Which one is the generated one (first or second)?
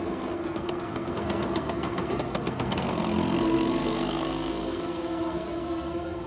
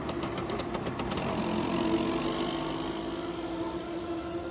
first